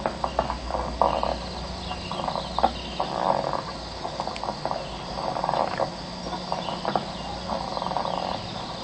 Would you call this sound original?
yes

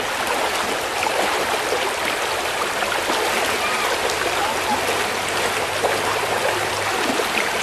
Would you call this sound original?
yes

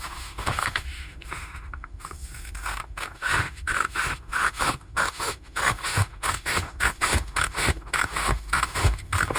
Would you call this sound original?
no